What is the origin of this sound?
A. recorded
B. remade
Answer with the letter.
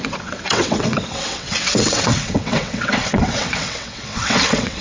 B